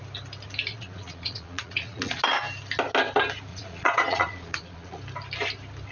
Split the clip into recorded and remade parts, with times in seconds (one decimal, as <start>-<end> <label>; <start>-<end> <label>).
0.0-0.7 recorded; 0.7-2.2 remade; 2.2-3.5 recorded; 3.5-5.0 remade; 5.0-5.9 recorded